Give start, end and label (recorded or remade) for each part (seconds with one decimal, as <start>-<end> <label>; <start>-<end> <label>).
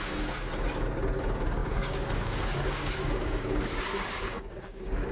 0.0-0.5 remade; 0.5-1.2 recorded; 1.2-5.1 remade